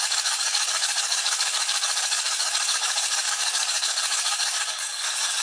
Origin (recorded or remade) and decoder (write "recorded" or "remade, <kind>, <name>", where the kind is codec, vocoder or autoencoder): remade, codec, DAC